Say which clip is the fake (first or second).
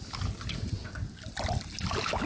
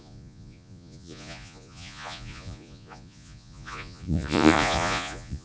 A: second